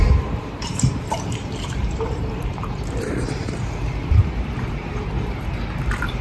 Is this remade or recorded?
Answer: remade